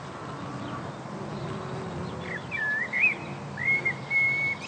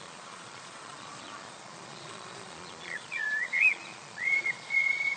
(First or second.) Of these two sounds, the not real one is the second